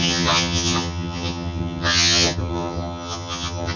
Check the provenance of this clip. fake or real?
fake